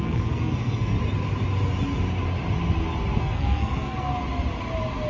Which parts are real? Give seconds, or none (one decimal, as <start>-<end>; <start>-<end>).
0.9-3.2; 4.1-5.1